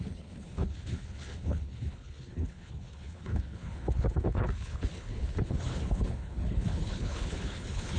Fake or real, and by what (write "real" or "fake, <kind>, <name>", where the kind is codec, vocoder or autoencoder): fake, codec, HILCodec